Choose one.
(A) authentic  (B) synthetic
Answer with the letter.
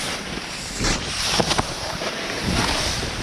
B